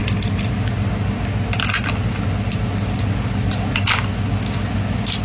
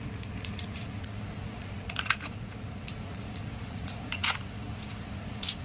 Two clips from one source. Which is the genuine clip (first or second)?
first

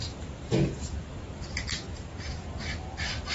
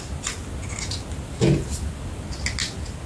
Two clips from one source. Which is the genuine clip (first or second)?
second